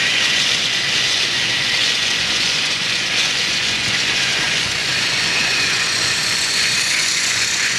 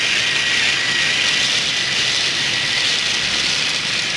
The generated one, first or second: first